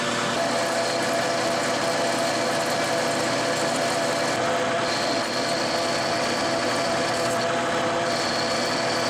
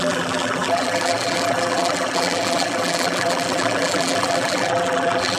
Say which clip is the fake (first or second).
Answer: second